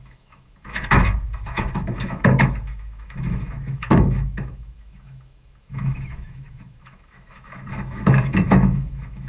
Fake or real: fake